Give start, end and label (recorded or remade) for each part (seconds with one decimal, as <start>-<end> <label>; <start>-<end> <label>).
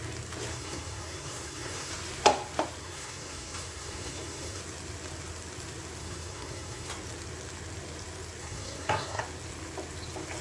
0.0-0.5 recorded; 0.5-1.9 remade; 1.9-2.8 recorded; 2.8-4.6 remade; 4.6-6.0 recorded; 6.0-6.9 remade; 6.9-8.4 recorded; 8.4-9.2 remade; 9.2-10.4 recorded